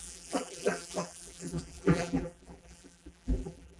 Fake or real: fake